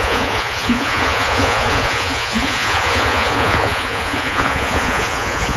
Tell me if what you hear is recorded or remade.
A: remade